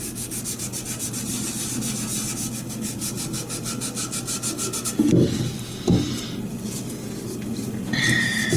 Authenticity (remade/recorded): recorded